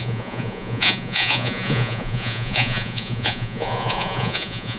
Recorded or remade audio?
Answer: remade